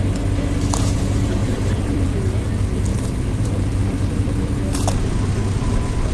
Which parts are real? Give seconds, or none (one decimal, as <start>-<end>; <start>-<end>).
0.0-1.4; 2.5-2.9; 4.6-6.1